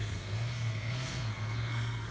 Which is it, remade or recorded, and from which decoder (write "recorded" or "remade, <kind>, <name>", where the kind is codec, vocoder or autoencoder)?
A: remade, codec, SNAC